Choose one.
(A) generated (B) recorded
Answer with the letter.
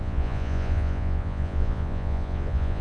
A